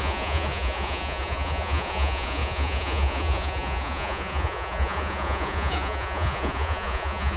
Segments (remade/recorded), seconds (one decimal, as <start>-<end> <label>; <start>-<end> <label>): 0.0-7.4 remade